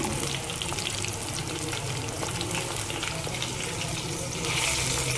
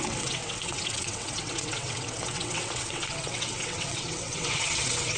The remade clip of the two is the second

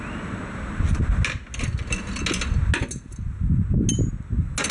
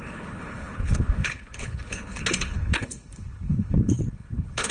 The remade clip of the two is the second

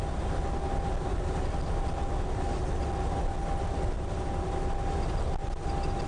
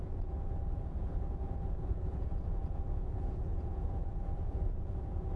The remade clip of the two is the second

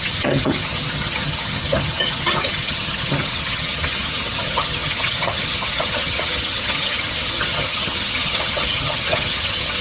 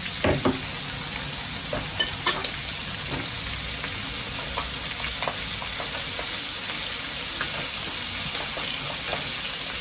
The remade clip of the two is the first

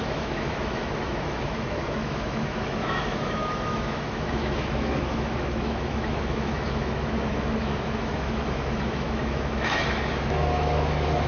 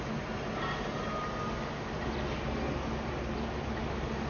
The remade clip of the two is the first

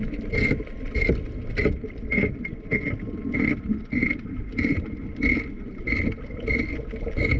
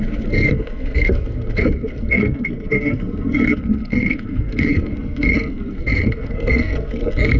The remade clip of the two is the second